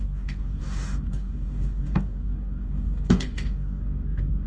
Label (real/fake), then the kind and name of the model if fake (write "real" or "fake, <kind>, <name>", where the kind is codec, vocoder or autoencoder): fake, codec, DAC